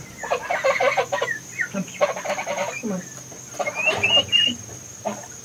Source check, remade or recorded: remade